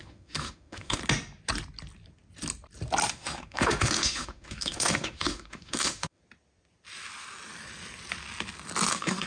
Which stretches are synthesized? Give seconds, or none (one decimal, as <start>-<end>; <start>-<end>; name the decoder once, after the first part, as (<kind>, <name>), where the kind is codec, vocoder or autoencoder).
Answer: 0.0-1.0 (autoencoder, DAC-VAE); 3.1-6.2; 8.9-9.3